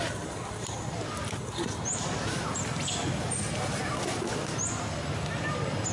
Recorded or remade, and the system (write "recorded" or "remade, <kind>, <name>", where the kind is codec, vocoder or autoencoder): recorded